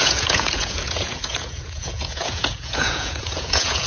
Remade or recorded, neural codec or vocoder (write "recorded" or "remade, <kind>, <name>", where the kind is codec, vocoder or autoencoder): remade, vocoder, Vocos